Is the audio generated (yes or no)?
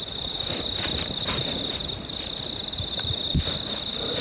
no